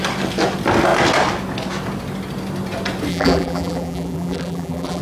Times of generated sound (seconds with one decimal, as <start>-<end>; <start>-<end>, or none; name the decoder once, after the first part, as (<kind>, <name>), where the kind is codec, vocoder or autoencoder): 3.1-5.0 (vocoder, BigVGAN v2)